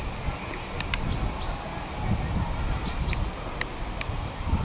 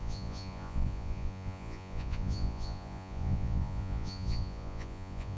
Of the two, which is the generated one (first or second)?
second